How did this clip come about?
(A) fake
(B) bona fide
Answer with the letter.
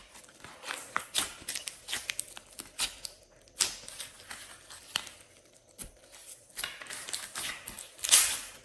B